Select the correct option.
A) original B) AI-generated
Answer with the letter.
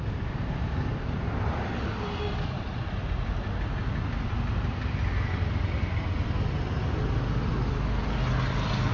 A